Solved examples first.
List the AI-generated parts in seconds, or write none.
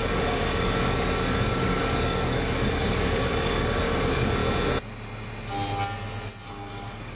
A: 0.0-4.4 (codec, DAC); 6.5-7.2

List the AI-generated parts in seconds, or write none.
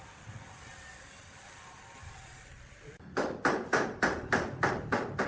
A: none